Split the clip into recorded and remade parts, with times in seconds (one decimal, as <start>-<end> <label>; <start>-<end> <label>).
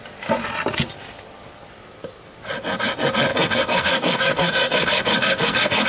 0.0-3.3 recorded; 3.3-5.9 remade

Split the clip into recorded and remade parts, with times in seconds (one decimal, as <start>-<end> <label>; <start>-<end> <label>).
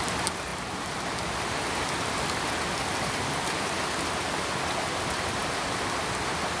0.0-6.6 recorded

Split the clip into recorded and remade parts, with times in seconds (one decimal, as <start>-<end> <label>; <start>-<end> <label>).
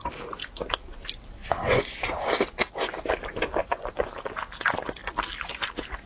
0.0-1.4 recorded; 1.4-2.1 remade; 2.1-3.6 recorded; 3.6-4.1 remade; 4.1-6.1 recorded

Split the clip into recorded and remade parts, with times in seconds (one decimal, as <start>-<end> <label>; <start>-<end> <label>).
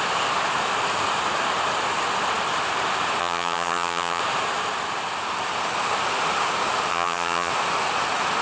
0.0-3.2 recorded; 3.2-4.2 remade; 4.2-6.9 recorded; 6.9-7.5 remade; 7.5-8.4 recorded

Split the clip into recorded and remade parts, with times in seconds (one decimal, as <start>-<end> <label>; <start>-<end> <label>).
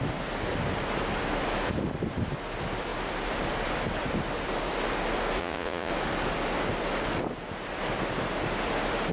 0.0-5.4 recorded; 5.4-5.9 remade; 5.9-9.1 recorded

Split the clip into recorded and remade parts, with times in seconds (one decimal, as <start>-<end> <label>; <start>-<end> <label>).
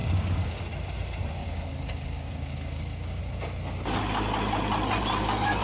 0.0-0.6 remade; 0.6-1.4 recorded; 1.4-3.2 remade; 3.2-5.6 recorded